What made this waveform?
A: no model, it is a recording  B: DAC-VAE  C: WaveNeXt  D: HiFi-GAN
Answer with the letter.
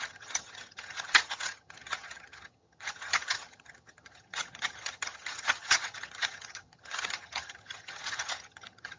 D